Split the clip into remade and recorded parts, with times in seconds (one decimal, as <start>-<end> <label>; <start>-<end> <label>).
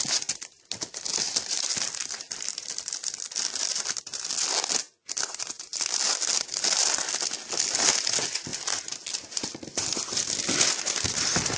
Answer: 0.0-8.5 recorded; 8.5-9.5 remade; 9.5-11.6 recorded